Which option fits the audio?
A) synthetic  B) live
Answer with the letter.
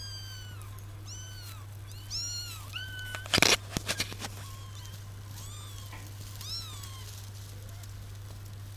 B